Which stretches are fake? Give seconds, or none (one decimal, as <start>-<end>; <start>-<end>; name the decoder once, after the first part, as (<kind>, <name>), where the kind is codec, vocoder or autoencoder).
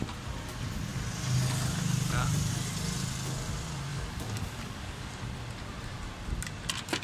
3.9-5.2 (codec, DAC)